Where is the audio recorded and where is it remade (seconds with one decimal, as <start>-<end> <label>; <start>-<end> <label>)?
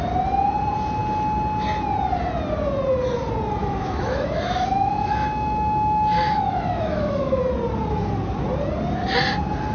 0.0-3.6 recorded; 3.6-7.4 remade; 7.4-9.7 recorded